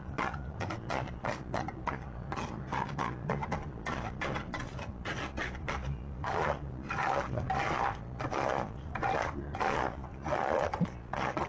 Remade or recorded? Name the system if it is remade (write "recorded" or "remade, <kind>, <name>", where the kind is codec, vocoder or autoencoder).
remade, vocoder, Vocos